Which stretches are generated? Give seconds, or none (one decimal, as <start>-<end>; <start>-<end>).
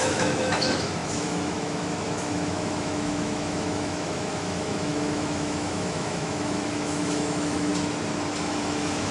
0.0-7.7; 8.4-9.1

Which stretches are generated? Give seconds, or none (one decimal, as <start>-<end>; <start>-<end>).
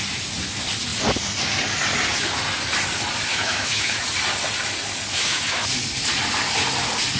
3.3-4.0; 5.1-5.6